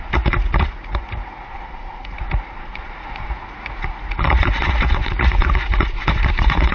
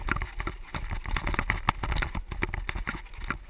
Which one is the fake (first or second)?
first